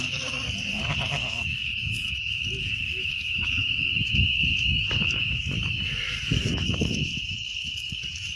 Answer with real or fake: fake